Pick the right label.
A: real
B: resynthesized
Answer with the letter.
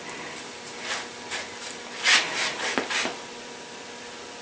A